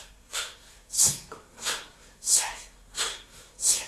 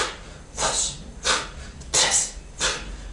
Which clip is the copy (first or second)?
first